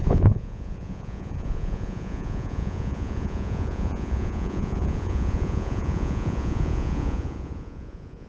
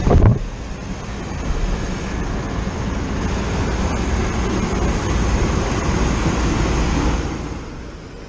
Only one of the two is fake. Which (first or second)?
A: first